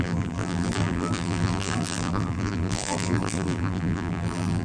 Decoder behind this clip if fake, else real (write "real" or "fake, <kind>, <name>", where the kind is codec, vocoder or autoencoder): fake, vocoder, BigVGAN v2